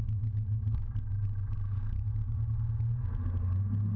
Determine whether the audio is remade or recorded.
recorded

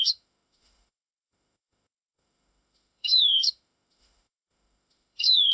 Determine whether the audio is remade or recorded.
remade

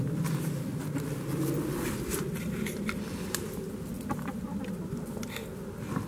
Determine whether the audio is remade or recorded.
recorded